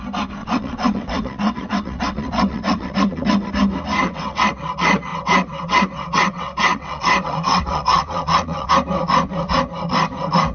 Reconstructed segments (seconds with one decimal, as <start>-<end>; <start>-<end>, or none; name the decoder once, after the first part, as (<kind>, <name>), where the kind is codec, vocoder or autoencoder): 0.4-3.5 (vocoder, WaveNeXt); 4.0-4.5; 5.1-8.7